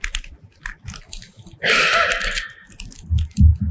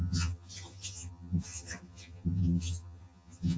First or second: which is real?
first